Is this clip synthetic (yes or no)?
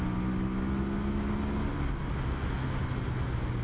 no